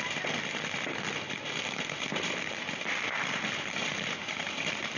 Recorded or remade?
recorded